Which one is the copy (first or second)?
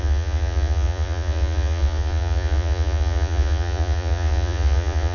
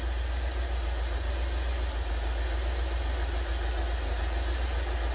first